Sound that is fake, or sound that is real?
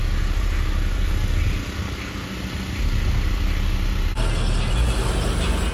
real